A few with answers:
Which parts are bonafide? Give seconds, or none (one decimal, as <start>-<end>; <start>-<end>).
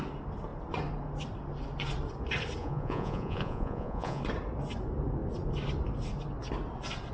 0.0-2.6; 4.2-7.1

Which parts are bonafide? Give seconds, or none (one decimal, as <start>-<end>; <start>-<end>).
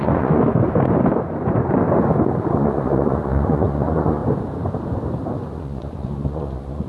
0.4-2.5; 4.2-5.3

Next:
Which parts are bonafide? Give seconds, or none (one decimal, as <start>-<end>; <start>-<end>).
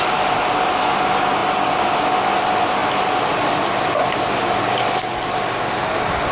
0.0-6.3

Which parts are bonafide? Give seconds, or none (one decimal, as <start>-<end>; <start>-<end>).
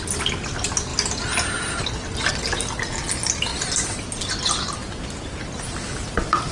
0.0-6.5